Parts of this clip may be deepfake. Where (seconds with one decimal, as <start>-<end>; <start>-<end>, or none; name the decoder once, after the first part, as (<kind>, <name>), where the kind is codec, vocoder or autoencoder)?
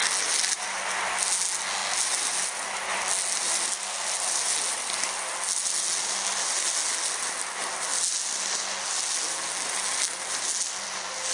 none